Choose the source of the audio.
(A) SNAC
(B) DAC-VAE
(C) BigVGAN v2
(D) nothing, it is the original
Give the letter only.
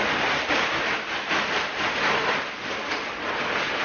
C